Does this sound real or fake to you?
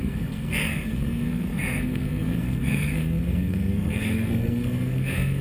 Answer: fake